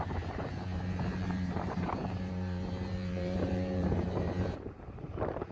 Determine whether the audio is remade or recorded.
remade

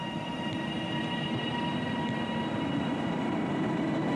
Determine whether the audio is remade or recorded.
recorded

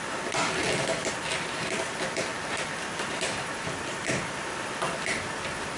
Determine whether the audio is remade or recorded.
recorded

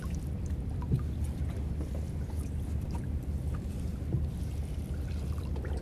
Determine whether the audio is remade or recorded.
recorded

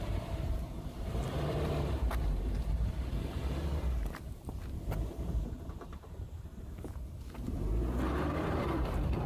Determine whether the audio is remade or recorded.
remade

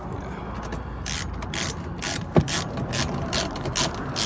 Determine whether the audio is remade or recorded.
recorded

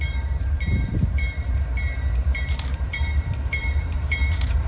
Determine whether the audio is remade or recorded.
remade